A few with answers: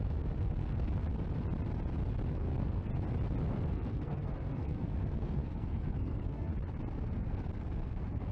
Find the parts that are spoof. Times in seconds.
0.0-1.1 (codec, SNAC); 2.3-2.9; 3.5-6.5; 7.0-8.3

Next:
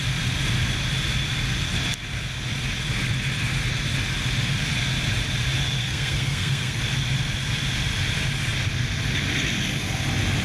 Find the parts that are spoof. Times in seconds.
5.8-6.8 (codec, SNAC)

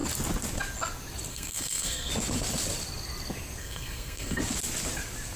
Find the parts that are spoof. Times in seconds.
1.3-2.1 (codec, SNAC); 3.6-4.4

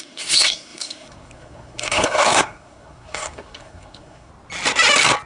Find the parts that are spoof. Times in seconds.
0.0-4.3 (codec, SNAC)

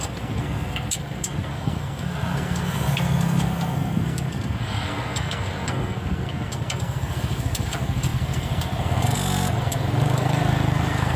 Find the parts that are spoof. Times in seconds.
0.0-11.2 (codec, SNAC)